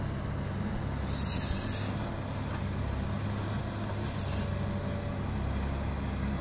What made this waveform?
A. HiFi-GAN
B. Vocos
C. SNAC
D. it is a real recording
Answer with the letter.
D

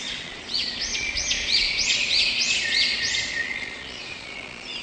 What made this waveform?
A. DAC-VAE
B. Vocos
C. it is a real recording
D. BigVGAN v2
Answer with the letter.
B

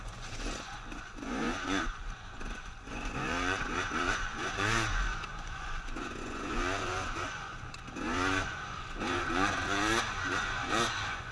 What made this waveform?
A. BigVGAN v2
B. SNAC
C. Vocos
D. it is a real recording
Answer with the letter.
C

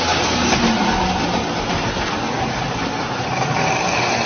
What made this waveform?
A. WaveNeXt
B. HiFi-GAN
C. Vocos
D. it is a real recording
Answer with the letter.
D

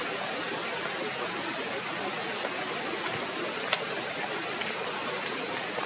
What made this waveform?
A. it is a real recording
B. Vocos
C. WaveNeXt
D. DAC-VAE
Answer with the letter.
A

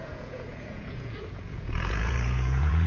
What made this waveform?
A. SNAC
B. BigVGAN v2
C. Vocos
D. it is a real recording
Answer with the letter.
C